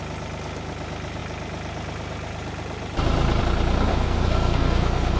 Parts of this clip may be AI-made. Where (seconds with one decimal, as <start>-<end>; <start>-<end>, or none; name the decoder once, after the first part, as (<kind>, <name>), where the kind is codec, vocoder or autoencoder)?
3.9-5.2 (codec, SNAC)